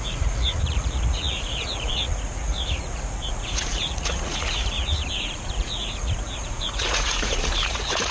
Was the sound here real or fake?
fake